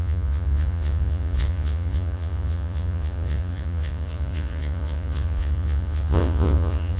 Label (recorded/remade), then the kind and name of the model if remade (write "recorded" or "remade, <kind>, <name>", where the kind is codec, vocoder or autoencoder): remade, vocoder, Vocos